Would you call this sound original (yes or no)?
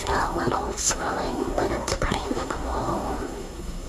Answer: no